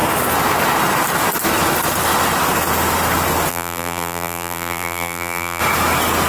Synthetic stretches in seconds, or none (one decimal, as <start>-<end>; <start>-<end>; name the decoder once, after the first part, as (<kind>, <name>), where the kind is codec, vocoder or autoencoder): 3.5-5.6 (vocoder, BigVGAN v2)